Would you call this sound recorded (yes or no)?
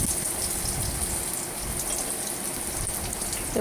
yes